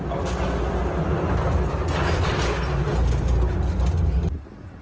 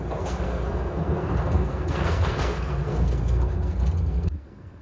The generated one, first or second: second